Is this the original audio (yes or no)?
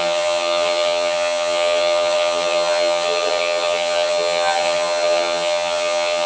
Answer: no